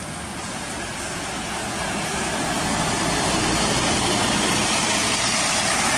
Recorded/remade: recorded